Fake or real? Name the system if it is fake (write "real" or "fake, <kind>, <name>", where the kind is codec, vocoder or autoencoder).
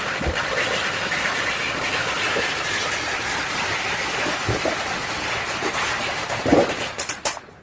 real